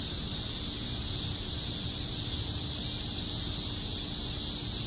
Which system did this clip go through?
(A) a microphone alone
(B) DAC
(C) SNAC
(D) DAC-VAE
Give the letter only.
A